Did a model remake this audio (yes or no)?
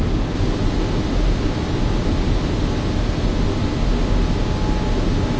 no